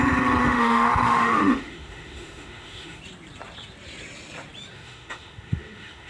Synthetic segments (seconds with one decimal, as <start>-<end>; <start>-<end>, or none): 0.4-3.0; 4.7-6.1